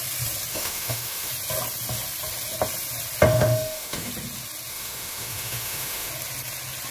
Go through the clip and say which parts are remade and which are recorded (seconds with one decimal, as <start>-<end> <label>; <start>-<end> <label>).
0.0-0.5 recorded; 0.5-1.3 remade; 1.3-3.3 recorded; 3.3-4.1 remade; 4.1-4.7 recorded; 4.7-6.1 remade; 6.1-6.9 recorded